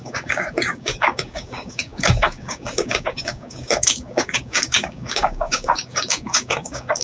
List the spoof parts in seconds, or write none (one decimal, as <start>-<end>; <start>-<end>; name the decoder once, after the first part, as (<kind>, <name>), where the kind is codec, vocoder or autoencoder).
0.0-7.0 (codec, DAC)